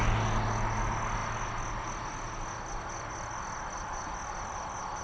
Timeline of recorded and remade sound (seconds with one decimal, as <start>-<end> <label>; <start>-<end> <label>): 0.0-5.0 recorded